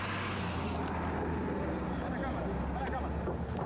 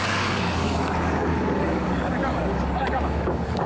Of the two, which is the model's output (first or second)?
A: second